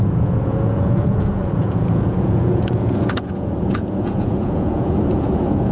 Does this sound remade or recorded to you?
remade